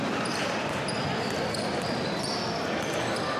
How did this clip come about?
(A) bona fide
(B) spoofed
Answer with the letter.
A